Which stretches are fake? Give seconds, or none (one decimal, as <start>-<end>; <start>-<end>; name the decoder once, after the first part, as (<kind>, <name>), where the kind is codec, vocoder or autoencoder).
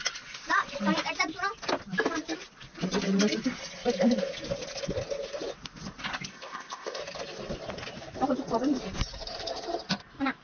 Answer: 6.3-7.0 (codec, ZipCodec)